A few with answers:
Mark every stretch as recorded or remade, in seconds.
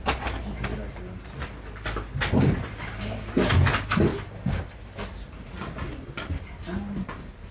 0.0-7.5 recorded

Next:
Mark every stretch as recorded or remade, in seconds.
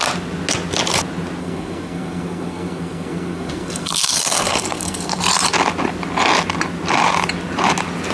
0.0-1.4 recorded; 1.4-5.2 remade; 5.2-8.1 recorded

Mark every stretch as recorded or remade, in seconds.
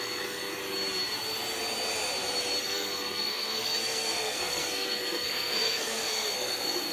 0.0-0.6 remade; 0.6-2.6 recorded; 2.6-6.9 remade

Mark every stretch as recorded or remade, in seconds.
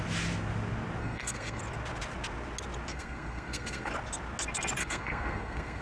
0.0-1.0 recorded; 1.0-1.6 remade; 1.6-2.9 recorded; 2.9-3.9 remade; 3.9-4.8 recorded; 4.8-5.8 remade